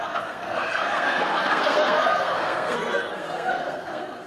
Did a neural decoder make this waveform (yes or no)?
yes